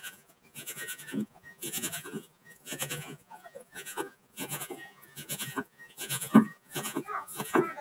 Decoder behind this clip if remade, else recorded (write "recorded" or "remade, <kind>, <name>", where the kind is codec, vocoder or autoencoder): remade, vocoder, Vocos